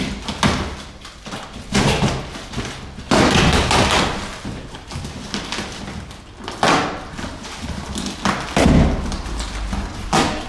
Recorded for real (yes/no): yes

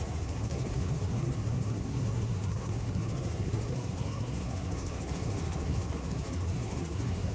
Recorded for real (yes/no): no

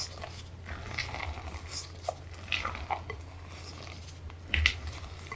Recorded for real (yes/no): yes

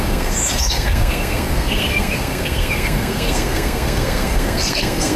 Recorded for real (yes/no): no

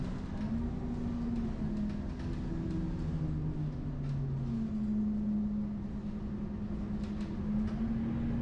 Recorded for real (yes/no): yes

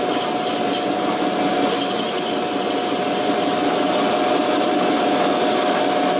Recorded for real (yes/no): yes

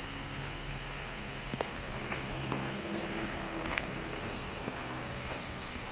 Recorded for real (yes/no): no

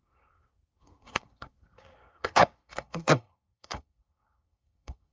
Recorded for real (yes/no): no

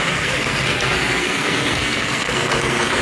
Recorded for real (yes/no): no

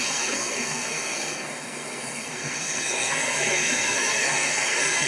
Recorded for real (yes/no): no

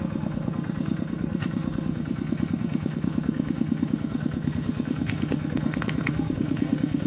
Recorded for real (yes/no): no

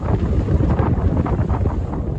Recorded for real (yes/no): yes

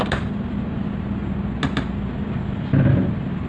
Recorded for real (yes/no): yes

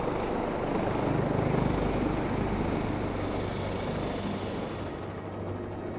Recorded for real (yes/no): yes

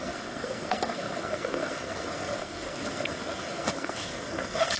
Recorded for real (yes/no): no